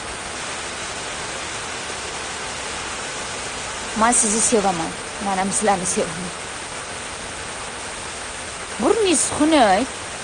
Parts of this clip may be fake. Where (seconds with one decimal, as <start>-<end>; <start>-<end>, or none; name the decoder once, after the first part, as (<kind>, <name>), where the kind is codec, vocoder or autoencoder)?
8.0-8.8 (autoencoder, DAC-VAE)